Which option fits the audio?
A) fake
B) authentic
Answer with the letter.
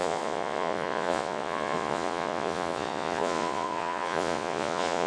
A